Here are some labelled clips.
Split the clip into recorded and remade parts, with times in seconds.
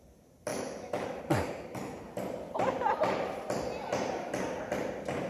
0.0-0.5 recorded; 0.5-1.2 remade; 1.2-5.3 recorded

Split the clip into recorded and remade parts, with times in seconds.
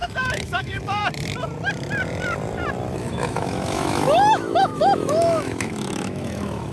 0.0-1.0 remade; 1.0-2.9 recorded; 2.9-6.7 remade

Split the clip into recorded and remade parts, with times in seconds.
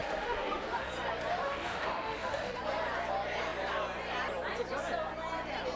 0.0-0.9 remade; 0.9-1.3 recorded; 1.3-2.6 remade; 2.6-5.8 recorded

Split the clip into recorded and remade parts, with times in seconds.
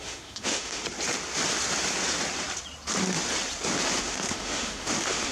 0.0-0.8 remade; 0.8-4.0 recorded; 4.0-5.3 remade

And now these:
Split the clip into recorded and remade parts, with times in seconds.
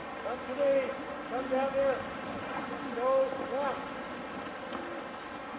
0.0-5.6 recorded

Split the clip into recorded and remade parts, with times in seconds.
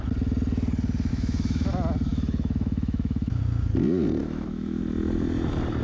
0.0-1.1 recorded; 1.1-1.7 remade; 1.7-2.1 recorded; 2.1-3.4 remade; 3.4-4.2 recorded; 4.2-4.8 remade; 4.8-5.8 recorded